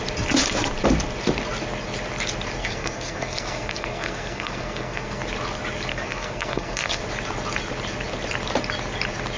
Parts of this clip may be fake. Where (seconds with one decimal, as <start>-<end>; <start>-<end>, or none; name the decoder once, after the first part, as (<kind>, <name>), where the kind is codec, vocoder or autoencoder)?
2.6-5.2 (codec, SNAC); 5.9-7.0